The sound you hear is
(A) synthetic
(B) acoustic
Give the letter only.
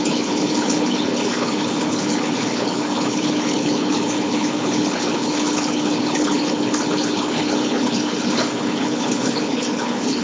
A